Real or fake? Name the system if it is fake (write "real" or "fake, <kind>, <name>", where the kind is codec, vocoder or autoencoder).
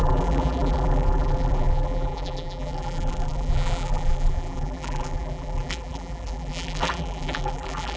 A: fake, vocoder, BigVGAN v2